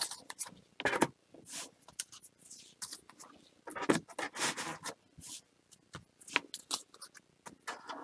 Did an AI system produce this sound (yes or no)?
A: no